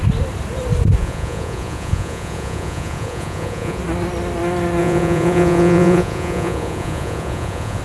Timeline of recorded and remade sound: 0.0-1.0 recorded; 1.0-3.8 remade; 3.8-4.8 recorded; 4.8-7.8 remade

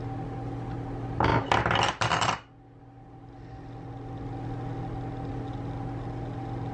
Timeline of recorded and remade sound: 0.0-6.7 recorded